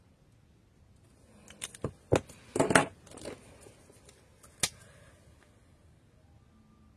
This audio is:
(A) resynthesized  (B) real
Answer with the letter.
B